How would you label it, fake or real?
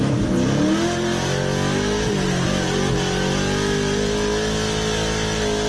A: real